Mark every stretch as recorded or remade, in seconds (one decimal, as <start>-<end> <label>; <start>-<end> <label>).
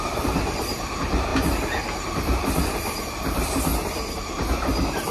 0.0-3.7 remade; 3.7-4.5 recorded; 4.5-5.1 remade